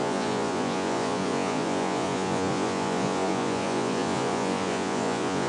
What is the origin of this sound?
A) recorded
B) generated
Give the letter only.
B